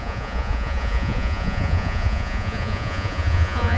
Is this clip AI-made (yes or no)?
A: yes